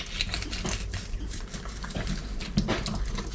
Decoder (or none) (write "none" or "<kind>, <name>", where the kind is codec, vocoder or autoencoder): none